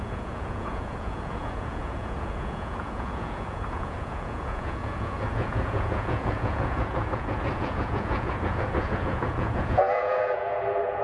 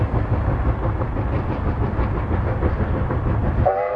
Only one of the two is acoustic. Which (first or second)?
second